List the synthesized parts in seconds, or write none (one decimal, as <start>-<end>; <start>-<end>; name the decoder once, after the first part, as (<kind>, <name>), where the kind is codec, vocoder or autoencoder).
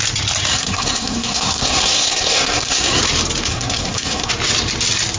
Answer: 0.5-3.0 (codec, SNAC); 3.5-4.3